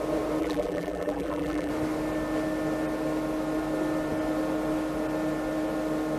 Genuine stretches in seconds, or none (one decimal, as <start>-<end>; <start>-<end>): 0.0-0.4; 1.7-6.2